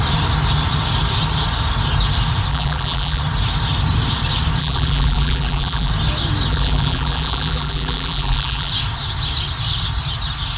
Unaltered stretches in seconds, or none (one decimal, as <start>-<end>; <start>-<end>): 0.0-2.5; 3.2-4.6; 5.9-6.5; 8.7-10.6